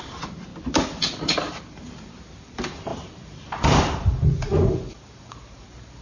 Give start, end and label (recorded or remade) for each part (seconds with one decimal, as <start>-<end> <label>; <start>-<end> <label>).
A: 0.0-0.5 remade; 0.5-1.2 recorded; 1.2-6.0 remade